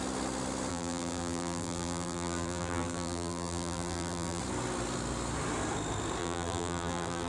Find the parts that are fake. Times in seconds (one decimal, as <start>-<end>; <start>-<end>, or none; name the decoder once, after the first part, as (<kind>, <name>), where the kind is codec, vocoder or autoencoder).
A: 0.7-4.4 (vocoder, BigVGAN v2); 6.2-7.3